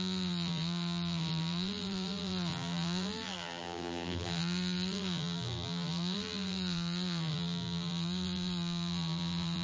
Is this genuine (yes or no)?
no